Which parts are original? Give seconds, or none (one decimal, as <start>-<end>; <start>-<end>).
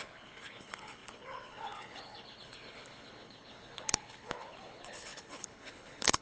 none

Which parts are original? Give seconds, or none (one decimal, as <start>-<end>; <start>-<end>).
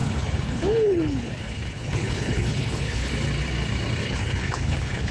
3.1-4.0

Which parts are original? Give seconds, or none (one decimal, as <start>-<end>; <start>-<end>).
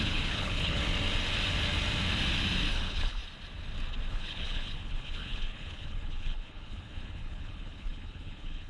0.8-2.7; 3.2-4.1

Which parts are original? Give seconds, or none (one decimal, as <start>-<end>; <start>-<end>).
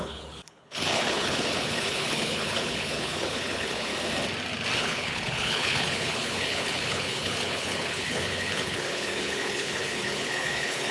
3.9-4.8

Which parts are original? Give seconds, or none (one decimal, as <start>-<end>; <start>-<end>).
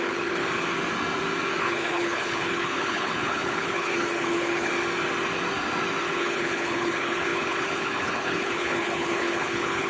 0.4-1.6; 4.7-6.0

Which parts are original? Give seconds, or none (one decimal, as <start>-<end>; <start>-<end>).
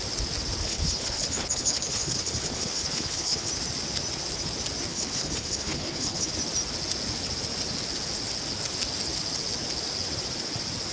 0.0-0.6; 3.5-4.9; 6.3-10.9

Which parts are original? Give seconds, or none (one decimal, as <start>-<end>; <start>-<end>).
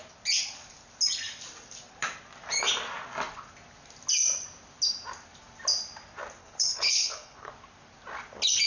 0.0-6.4; 7.5-8.7